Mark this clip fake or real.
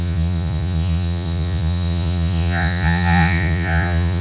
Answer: fake